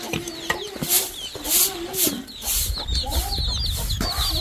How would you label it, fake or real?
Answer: real